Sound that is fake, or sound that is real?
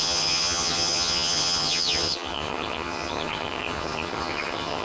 fake